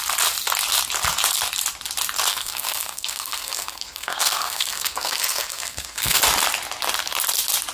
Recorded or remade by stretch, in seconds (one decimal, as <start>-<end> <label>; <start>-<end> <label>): 0.0-2.3 recorded; 2.3-6.2 remade; 6.2-7.7 recorded